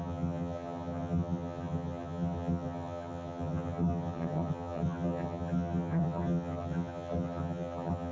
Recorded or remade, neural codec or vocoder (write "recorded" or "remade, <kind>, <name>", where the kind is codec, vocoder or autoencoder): remade, vocoder, HiFi-GAN